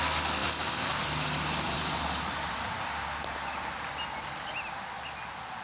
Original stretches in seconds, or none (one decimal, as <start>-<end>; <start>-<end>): 0.0-0.4; 2.9-5.6

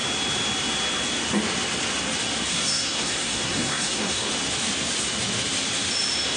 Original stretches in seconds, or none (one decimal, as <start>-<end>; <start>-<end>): 0.0-2.5; 4.3-6.4

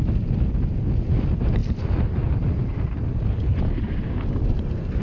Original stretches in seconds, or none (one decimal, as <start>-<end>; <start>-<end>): 0.0-5.0

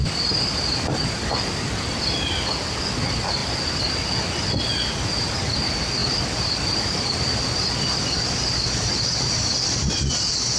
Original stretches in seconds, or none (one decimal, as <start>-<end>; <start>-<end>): 0.0-6.0; 7.7-10.6